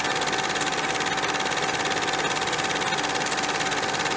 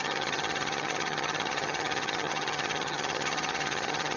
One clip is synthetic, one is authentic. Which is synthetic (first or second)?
second